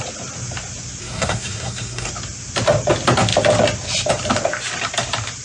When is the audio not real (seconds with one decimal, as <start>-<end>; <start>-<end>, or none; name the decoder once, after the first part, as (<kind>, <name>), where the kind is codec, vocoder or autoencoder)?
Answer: 1.0-2.1 (codec, SNAC)